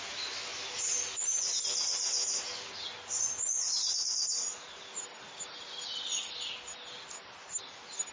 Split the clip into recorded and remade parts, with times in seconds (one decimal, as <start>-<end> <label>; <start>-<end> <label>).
0.0-8.1 recorded